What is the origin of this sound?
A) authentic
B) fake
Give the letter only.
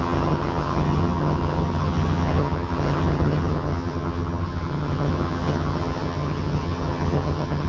B